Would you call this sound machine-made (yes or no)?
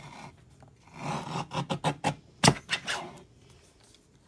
no